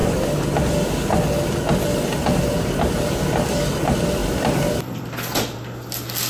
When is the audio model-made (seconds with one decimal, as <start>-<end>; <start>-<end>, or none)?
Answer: 4.2-5.0